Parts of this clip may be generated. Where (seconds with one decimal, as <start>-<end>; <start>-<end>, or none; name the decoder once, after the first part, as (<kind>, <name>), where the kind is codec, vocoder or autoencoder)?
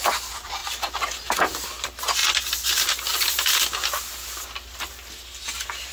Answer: none